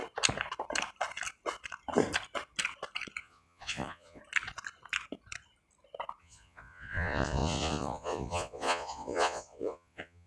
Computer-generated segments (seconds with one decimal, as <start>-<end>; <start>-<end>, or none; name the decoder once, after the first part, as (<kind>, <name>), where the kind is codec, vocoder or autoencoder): 3.2-4.2 (vocoder, Vocos); 6.2-10.3